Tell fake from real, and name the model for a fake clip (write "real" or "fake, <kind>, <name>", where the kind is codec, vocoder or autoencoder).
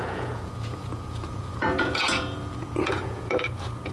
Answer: fake, vocoder, Vocos